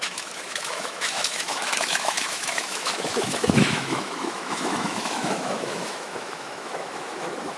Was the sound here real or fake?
fake